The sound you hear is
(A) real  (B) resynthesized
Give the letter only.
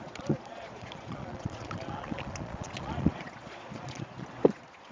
B